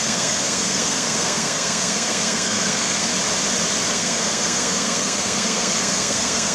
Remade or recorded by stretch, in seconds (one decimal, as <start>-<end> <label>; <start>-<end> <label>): 0.0-3.1 remade; 3.1-3.9 recorded; 3.9-6.5 remade